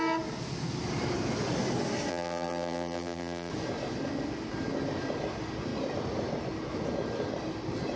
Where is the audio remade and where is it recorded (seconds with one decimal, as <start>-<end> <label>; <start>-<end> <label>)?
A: 0.0-2.1 recorded; 2.1-3.5 remade; 3.5-8.0 recorded